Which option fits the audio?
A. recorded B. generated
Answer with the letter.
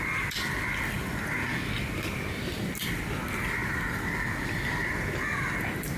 A